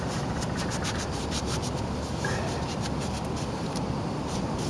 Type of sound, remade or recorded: remade